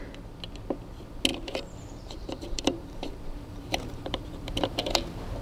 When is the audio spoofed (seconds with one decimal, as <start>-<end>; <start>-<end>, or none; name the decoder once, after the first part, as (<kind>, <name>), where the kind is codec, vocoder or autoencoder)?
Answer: 1.3-4.5 (vocoder, BigVGAN v2)